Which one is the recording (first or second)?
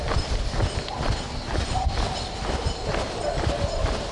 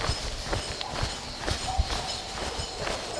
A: second